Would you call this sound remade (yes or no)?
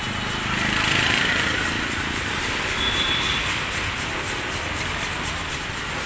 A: yes